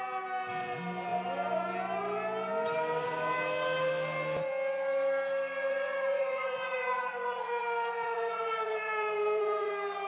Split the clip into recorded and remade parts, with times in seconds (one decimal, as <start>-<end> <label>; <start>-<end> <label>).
0.0-5.6 recorded; 5.6-9.7 remade; 9.7-10.1 recorded